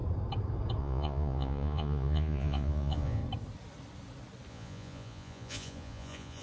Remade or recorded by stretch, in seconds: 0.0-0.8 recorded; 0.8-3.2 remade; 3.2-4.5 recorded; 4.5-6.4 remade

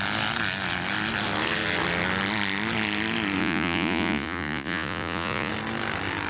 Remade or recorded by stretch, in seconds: 0.0-3.4 recorded; 3.4-5.5 remade; 5.5-6.3 recorded